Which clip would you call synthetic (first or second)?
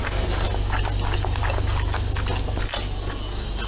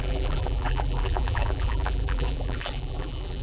second